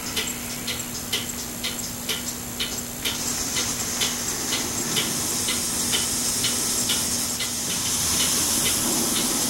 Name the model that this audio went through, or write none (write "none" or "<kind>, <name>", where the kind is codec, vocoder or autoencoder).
none